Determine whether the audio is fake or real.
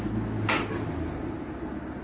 real